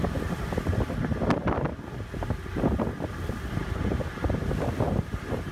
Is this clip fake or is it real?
real